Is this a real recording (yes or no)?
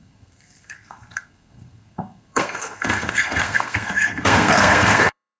no